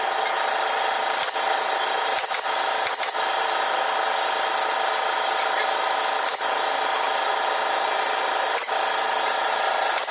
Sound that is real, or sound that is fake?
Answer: real